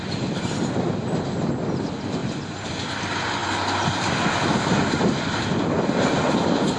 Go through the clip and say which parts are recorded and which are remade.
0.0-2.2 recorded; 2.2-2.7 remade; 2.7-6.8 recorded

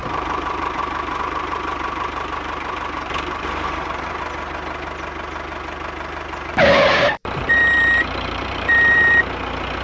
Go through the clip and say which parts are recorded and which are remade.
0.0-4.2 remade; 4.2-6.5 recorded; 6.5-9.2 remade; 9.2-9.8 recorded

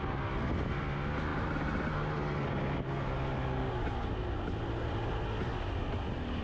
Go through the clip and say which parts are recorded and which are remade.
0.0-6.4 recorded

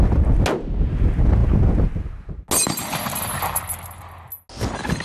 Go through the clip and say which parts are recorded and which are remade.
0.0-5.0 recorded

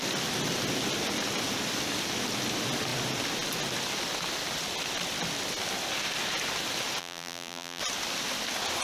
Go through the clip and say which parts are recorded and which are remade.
0.0-7.0 recorded; 7.0-7.8 remade; 7.8-8.8 recorded

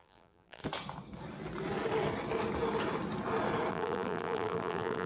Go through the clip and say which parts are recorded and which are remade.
0.0-0.6 remade; 0.6-3.7 recorded; 3.7-5.1 remade

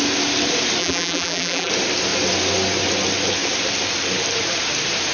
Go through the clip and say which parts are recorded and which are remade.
0.0-0.8 recorded; 0.8-1.7 remade; 1.7-5.1 recorded